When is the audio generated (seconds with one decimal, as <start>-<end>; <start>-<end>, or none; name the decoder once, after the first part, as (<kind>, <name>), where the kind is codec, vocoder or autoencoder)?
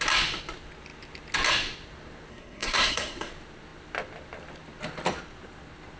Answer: 2.3-3.3 (codec, SNAC)